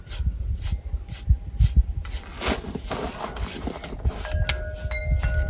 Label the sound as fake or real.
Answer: real